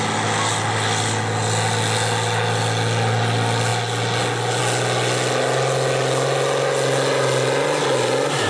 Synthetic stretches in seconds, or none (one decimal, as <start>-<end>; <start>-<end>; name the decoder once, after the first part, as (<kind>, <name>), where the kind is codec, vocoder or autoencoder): none